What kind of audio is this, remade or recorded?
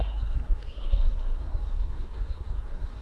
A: remade